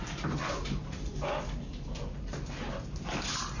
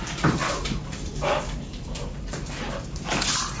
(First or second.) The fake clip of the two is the second